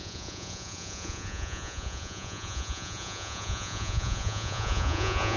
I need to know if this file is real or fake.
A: fake